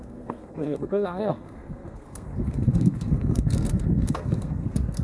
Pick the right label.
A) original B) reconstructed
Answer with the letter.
B